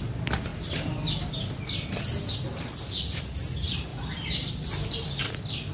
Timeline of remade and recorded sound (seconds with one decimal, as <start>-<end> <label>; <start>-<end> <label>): 0.0-3.9 recorded; 3.9-4.5 remade; 4.5-5.7 recorded